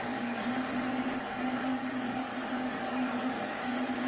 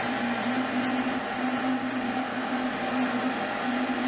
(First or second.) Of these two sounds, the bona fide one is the second